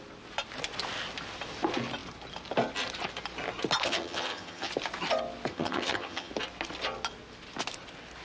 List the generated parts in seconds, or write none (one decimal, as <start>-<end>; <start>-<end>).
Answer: 3.8-4.7; 5.5-6.3